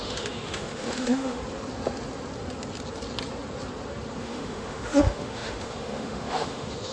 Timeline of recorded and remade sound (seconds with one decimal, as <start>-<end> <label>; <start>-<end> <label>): 0.0-1.4 remade; 1.4-4.2 recorded; 4.2-6.9 remade